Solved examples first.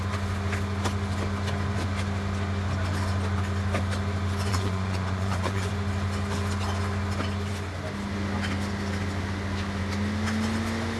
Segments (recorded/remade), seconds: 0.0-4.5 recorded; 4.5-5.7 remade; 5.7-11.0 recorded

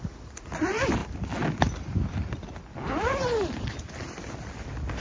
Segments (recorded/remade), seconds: 0.0-5.0 recorded

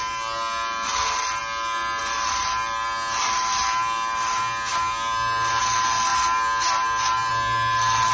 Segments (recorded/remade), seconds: 0.0-8.1 recorded

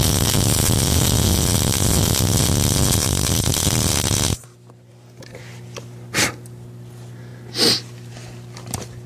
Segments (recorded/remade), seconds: 0.0-9.1 recorded

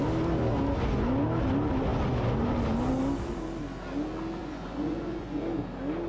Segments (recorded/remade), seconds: 0.0-4.4 recorded; 4.4-5.4 remade; 5.4-6.1 recorded

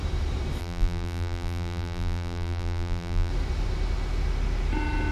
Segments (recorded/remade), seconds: 0.0-0.6 recorded; 0.6-3.3 remade; 3.3-5.1 recorded

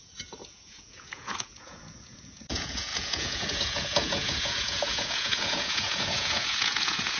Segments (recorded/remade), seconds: 0.0-7.2 remade